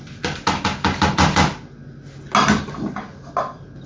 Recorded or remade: recorded